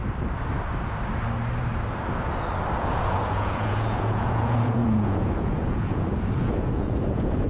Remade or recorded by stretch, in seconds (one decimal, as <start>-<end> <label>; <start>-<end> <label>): 0.0-2.8 recorded; 2.8-7.5 remade